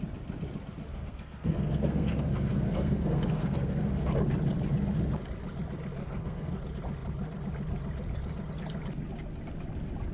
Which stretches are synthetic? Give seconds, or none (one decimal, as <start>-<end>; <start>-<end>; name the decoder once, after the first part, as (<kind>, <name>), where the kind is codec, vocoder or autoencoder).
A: 0.9-4.1 (codec, SNAC); 6.0-6.6